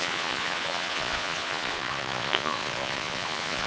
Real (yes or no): no